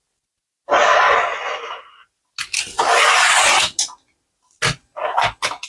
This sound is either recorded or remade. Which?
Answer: recorded